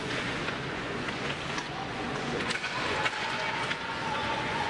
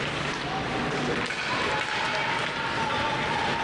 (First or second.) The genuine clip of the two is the second